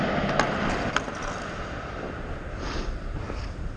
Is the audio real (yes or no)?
yes